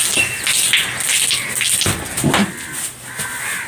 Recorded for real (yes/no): yes